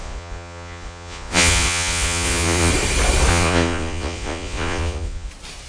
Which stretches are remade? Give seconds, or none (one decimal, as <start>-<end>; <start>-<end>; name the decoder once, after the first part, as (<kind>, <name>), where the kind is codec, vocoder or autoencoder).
0.0-2.7 (vocoder, Vocos); 3.3-5.3